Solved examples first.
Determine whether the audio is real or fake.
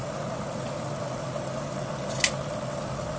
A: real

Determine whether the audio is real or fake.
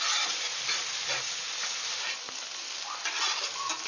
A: real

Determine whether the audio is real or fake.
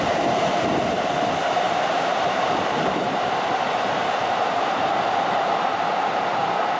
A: fake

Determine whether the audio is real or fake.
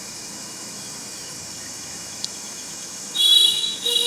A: fake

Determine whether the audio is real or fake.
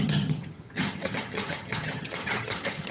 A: fake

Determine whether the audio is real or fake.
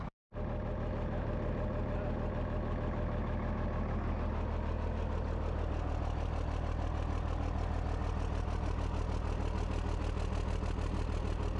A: real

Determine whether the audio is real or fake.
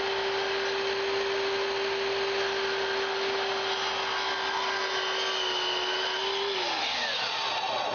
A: real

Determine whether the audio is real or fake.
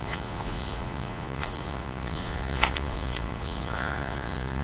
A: fake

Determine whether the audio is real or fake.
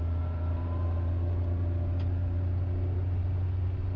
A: real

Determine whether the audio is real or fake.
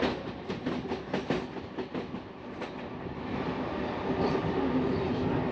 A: real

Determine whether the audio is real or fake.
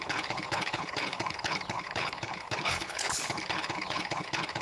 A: fake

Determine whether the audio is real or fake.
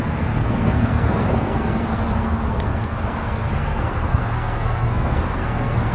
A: fake